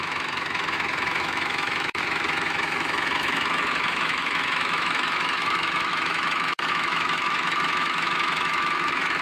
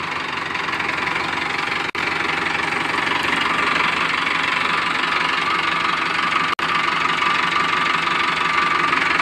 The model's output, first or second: first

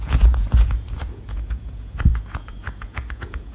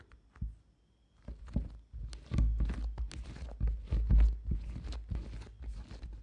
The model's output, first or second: first